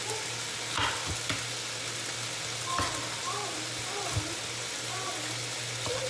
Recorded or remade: recorded